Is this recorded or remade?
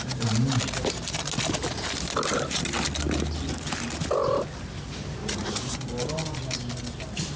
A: recorded